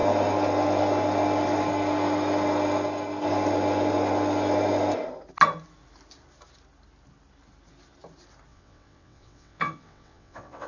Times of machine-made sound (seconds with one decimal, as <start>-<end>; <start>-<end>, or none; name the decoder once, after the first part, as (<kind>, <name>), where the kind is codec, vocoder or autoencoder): 8.5-10.7 (vocoder, WaveNeXt)